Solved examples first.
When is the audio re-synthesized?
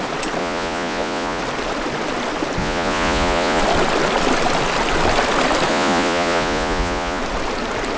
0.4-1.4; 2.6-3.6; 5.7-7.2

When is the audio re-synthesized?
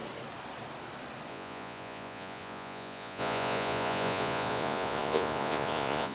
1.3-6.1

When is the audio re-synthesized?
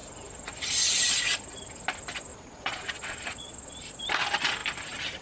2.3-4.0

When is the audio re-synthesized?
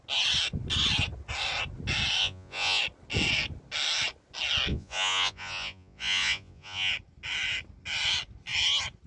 2.2-2.8; 4.7-6.9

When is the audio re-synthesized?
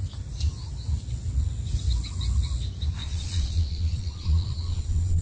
3.0-5.2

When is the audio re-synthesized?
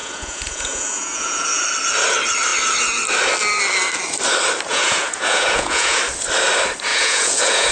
0.0-1.6; 4.7-6.0; 6.9-7.7